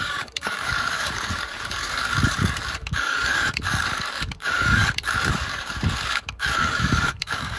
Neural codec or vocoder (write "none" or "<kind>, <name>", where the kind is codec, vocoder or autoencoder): codec, DAC